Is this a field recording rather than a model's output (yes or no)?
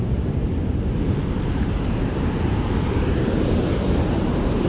no